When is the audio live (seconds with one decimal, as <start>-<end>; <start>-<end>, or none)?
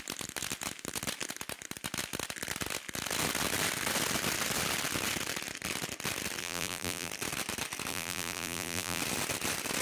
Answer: 0.0-6.4; 7.1-7.9; 9.0-9.8